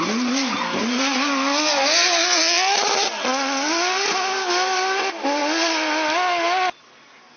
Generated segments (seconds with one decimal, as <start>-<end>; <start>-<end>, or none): none